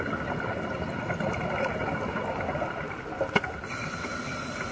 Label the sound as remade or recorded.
recorded